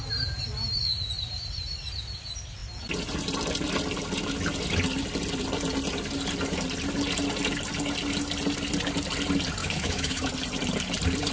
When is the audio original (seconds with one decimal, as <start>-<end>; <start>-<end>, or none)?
0.0-9.6; 10.3-11.3